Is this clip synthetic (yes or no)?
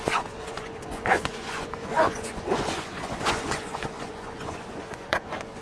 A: yes